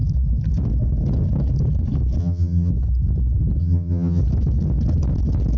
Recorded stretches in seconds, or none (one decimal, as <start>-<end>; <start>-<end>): 0.0-2.2; 2.7-3.6; 4.2-5.6